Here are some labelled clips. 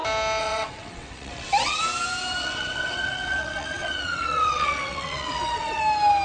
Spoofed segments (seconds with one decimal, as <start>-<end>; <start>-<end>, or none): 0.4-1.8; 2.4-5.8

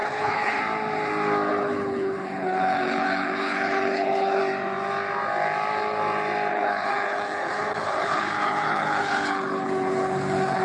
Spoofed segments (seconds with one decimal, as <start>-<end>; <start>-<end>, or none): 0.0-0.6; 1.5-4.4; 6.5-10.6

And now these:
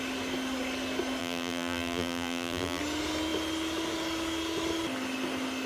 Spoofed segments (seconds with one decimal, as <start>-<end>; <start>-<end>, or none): 1.2-2.8